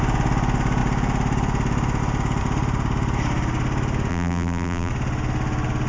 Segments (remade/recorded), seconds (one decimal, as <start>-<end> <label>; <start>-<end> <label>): 0.0-4.1 recorded; 4.1-4.9 remade; 4.9-5.9 recorded